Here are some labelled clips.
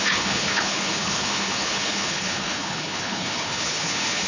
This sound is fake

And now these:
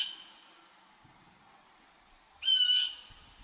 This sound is real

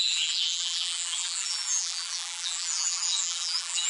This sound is fake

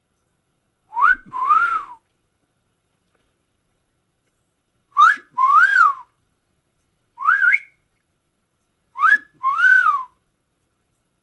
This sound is fake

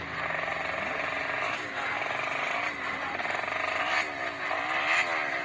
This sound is real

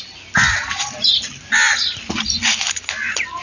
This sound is real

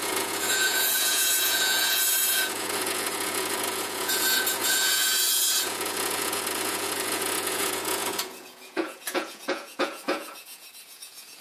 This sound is fake